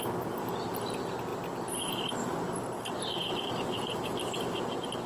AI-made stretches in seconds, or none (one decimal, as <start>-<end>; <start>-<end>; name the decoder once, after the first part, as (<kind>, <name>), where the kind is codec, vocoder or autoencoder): none